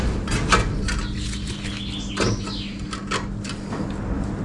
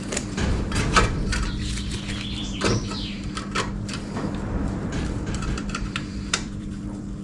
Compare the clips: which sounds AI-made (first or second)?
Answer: second